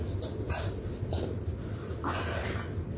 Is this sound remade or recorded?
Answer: recorded